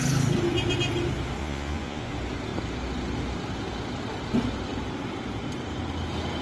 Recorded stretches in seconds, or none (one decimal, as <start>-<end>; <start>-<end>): 0.0-1.4; 2.1-6.4